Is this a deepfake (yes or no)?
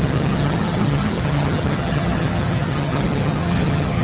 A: yes